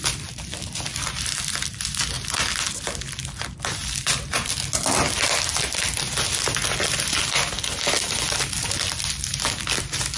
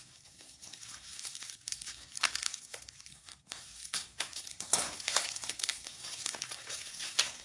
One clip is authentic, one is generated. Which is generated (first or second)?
second